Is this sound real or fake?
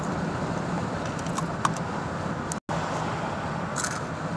real